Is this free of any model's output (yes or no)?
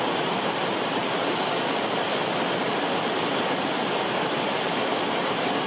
yes